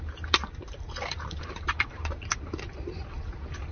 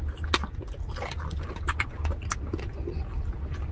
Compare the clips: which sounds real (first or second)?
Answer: second